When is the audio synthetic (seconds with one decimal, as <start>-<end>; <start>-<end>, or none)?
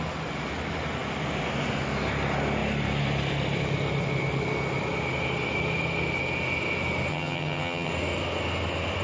7.1-7.9